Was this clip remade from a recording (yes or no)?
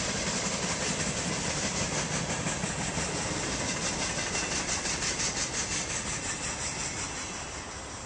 no